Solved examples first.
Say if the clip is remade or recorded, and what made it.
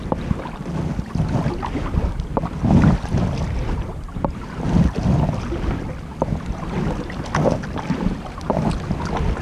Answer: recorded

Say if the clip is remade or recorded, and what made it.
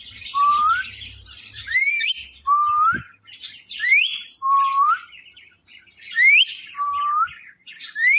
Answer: remade, vocoder, BigVGAN v2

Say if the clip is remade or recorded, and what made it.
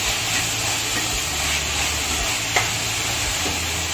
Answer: recorded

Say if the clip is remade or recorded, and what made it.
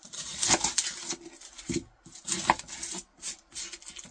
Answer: recorded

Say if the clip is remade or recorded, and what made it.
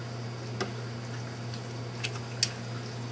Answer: recorded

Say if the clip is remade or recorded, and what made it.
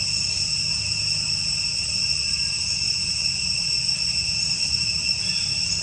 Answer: recorded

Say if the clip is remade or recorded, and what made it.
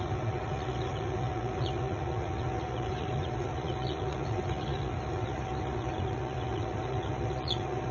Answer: remade, vocoder, Vocos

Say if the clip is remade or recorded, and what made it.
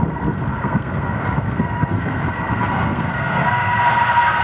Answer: remade, codec, SNAC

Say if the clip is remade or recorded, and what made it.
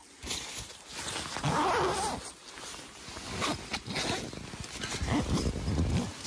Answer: recorded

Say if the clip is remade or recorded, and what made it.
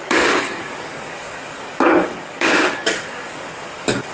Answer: remade, codec, DAC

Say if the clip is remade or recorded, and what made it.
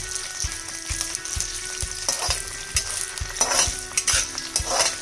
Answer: recorded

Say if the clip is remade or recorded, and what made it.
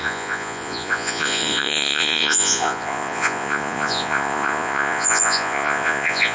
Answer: remade, vocoder, Vocos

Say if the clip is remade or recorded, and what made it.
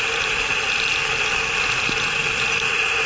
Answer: recorded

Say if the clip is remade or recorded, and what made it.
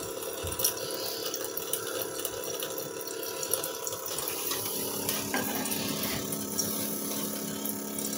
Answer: remade, vocoder, BigVGAN v2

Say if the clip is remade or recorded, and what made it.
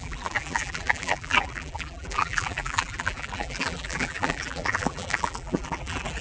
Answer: remade, vocoder, BigVGAN v2